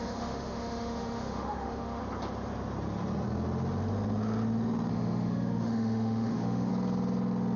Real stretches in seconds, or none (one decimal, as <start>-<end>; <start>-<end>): 2.0-4.9; 6.7-7.6